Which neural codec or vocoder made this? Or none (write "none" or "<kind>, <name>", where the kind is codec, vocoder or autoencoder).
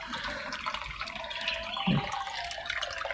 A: none